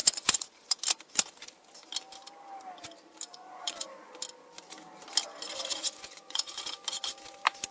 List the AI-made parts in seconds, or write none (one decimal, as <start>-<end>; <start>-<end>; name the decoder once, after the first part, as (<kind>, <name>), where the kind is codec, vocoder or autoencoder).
0.0-0.8 (vocoder, Vocos); 3.3-4.1; 5.7-6.6